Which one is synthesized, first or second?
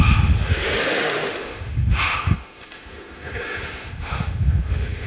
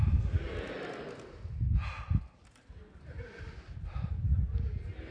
first